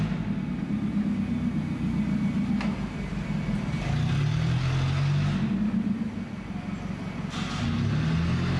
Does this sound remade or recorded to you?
recorded